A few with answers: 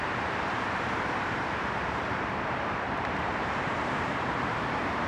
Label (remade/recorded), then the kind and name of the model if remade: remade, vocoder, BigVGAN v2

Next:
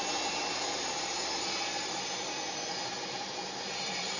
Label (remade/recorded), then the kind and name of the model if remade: remade, vocoder, BigVGAN v2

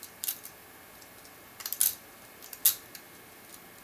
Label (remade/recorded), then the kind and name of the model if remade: recorded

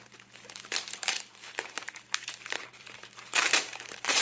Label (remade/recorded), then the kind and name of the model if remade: remade, vocoder, BigVGAN v2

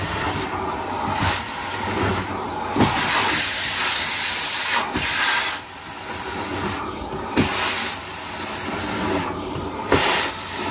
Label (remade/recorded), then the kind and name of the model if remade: remade, vocoder, BigVGAN v2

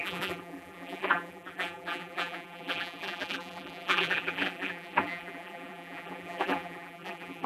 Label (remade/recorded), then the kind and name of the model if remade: remade, vocoder, BigVGAN v2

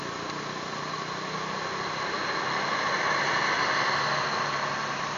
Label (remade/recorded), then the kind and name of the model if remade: recorded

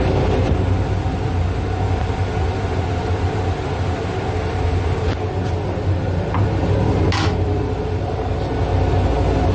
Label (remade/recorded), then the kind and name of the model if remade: recorded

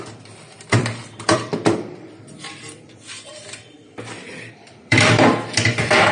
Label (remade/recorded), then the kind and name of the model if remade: remade, vocoder, BigVGAN v2